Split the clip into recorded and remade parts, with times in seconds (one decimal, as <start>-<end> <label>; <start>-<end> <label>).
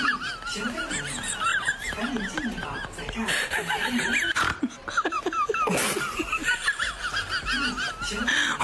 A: 0.0-1.5 recorded; 1.5-5.2 remade; 5.2-8.6 recorded